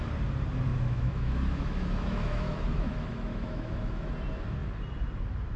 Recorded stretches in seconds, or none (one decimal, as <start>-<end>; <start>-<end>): 0.0-0.7; 4.1-5.6